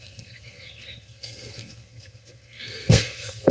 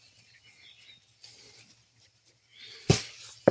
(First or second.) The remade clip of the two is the first